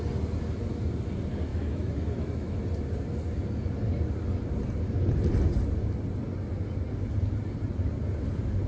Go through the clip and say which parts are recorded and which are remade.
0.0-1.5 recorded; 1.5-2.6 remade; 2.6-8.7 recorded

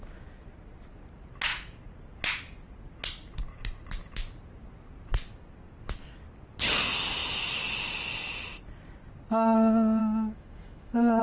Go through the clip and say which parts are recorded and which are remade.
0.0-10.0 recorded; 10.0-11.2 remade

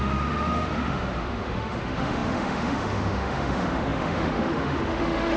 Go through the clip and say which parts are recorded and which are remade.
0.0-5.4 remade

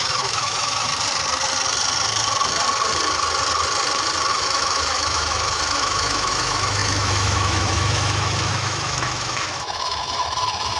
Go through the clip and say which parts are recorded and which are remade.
0.0-0.9 remade; 0.9-4.3 recorded; 4.3-10.8 remade

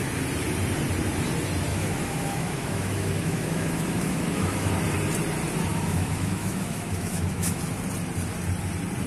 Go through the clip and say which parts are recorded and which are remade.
0.0-1.7 recorded; 1.7-4.7 remade; 4.7-5.7 recorded; 5.7-7.6 remade; 7.6-9.1 recorded

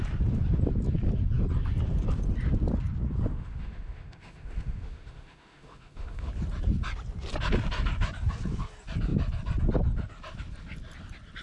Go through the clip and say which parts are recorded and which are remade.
0.0-3.3 recorded; 3.3-6.3 remade; 6.3-11.4 recorded